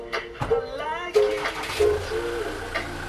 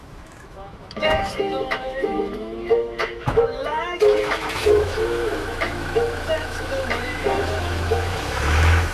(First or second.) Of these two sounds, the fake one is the second